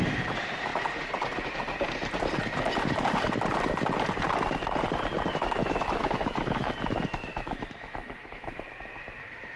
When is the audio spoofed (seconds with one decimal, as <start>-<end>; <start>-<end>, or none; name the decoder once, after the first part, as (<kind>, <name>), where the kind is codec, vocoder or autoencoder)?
5.6-6.7 (autoencoder, DAC-VAE); 7.3-8.6